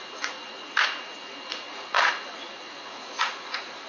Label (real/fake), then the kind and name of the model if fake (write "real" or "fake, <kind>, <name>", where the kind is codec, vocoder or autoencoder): fake, vocoder, Vocos